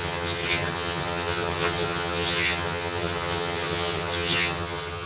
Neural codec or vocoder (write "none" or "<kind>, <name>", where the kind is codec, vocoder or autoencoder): vocoder, HiFi-GAN